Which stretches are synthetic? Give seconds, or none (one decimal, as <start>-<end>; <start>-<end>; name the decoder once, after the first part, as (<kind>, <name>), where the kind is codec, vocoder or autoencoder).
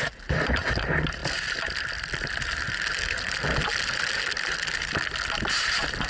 none